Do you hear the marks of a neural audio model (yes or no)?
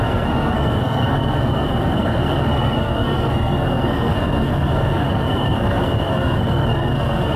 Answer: yes